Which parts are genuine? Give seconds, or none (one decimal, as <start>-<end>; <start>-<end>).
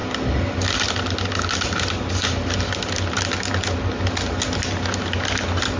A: 0.0-5.8